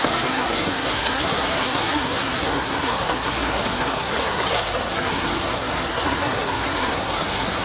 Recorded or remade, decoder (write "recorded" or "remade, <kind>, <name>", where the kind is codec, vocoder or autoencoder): remade, codec, SNAC